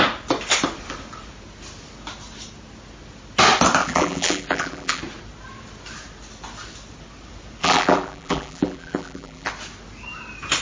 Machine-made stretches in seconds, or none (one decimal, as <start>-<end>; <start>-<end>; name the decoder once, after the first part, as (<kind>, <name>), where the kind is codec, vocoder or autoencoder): 3.8-5.0 (vocoder, BigVGAN v2); 7.6-9.5

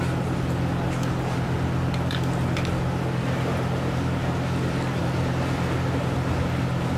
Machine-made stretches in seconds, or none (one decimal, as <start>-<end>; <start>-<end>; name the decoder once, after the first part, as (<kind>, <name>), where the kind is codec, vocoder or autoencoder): none

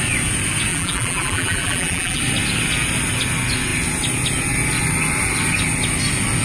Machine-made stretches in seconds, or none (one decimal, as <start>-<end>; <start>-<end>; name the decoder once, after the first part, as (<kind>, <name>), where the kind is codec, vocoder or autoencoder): 0.7-2.2 (vocoder, BigVGAN v2)